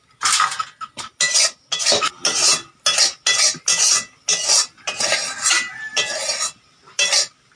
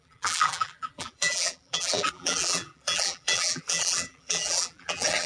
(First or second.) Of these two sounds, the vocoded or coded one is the second